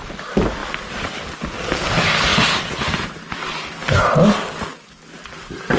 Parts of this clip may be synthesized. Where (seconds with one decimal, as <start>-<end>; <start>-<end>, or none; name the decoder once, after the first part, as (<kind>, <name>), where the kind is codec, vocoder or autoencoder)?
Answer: none